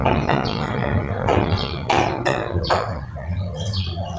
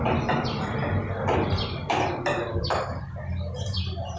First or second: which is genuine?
second